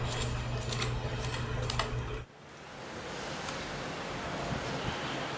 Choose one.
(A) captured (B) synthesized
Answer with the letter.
A